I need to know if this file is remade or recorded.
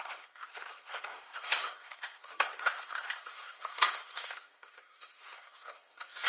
remade